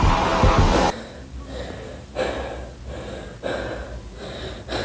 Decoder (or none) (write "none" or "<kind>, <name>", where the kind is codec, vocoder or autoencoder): none